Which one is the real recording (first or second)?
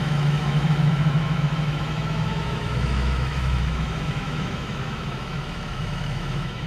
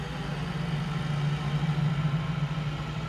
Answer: second